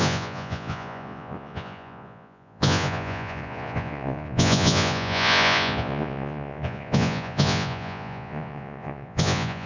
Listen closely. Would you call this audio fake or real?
fake